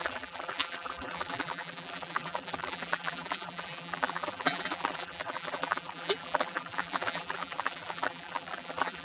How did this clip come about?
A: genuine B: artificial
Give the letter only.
B